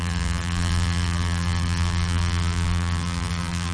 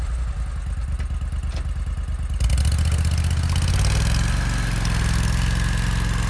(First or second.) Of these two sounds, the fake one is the first